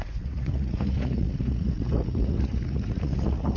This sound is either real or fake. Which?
fake